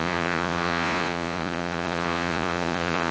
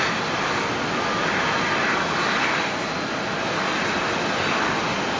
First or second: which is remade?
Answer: first